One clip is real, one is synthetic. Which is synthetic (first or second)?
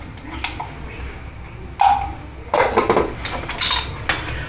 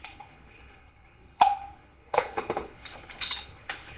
second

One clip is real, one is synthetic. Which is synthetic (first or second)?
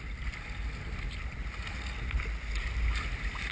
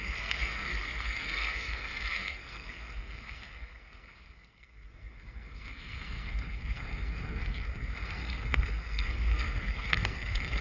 second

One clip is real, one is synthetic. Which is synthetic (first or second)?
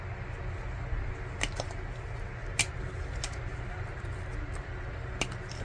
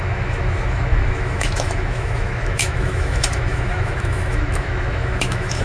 second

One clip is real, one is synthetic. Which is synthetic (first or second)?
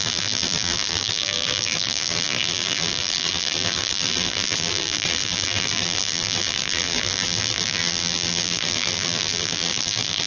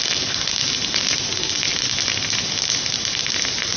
first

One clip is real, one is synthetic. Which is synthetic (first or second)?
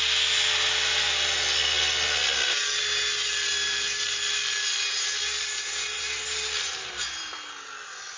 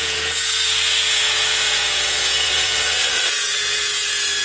second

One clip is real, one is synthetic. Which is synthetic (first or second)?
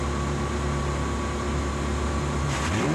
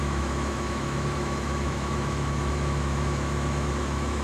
second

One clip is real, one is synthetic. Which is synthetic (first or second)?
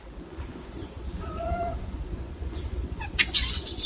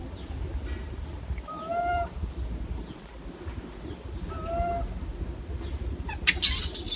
first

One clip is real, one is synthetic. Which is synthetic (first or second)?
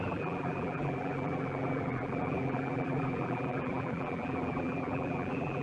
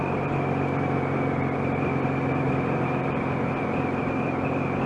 first